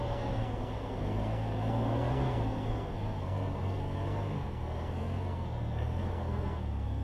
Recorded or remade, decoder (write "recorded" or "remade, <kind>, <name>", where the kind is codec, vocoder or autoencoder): remade, codec, SNAC